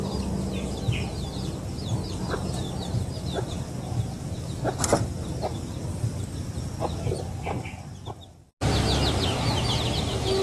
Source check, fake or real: real